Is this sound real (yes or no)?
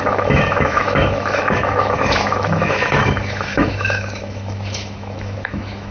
no